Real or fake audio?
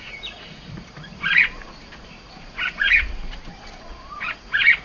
fake